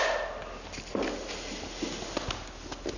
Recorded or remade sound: recorded